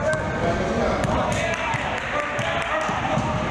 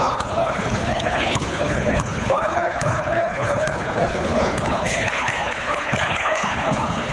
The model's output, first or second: second